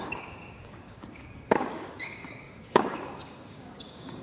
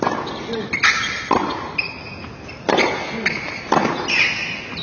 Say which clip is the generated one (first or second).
first